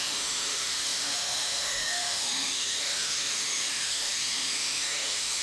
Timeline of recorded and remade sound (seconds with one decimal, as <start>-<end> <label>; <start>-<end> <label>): 0.0-5.4 remade